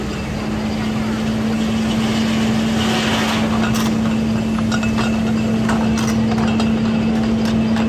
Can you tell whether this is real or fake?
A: real